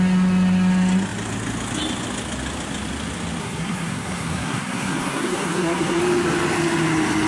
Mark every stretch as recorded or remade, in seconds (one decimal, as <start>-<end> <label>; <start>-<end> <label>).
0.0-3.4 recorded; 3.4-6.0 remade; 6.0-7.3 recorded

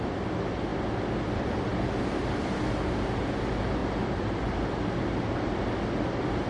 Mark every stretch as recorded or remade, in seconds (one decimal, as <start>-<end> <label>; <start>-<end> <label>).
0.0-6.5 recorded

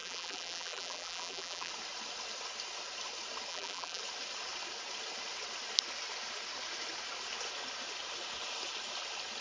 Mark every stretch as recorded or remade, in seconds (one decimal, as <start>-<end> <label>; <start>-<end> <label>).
0.0-1.7 remade; 1.7-3.5 recorded; 3.5-4.0 remade; 4.0-9.4 recorded